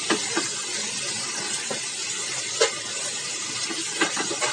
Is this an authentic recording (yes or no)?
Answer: yes